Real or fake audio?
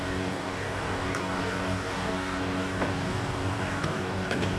fake